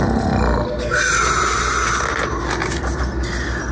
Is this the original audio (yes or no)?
yes